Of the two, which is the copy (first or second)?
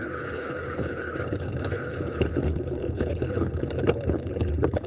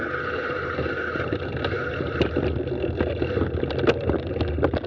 first